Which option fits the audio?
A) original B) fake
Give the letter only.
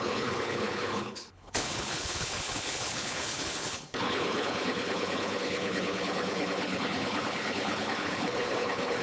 B